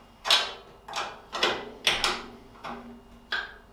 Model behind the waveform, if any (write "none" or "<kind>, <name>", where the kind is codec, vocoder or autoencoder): none